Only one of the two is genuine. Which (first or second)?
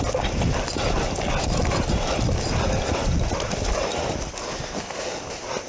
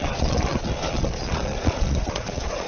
first